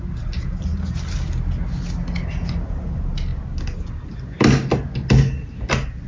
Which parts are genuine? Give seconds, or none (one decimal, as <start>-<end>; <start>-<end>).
0.0-6.1